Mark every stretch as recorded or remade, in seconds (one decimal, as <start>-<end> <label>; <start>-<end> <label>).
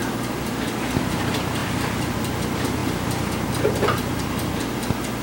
0.0-5.2 recorded